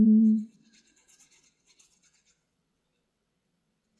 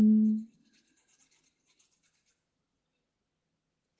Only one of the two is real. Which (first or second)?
second